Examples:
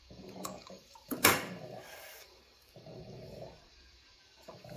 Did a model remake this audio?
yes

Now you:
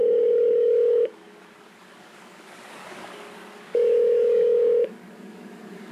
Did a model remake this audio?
yes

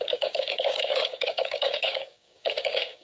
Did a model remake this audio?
yes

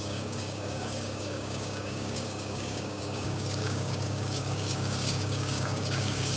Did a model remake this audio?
yes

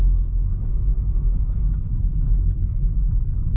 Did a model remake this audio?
yes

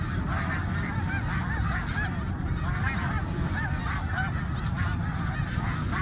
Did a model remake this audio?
no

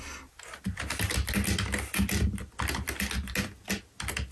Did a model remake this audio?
no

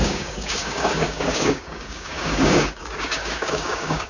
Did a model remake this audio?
yes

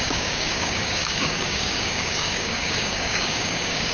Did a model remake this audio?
yes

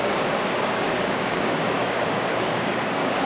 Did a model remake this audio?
yes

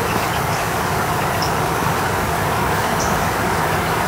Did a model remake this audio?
yes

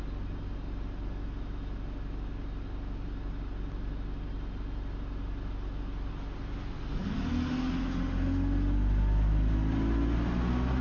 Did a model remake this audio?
no